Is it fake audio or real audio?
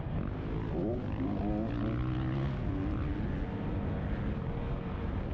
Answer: real